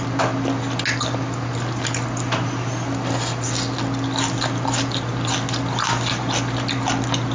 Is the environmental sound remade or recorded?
recorded